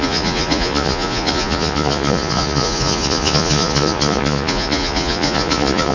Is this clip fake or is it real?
fake